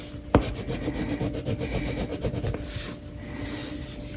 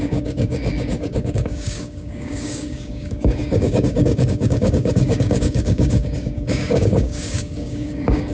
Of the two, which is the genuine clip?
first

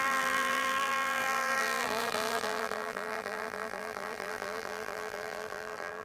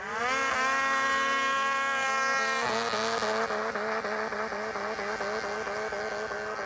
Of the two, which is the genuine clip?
second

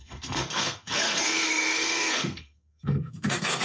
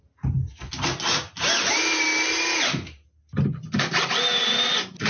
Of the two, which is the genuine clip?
second